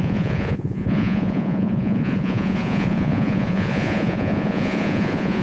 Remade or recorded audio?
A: remade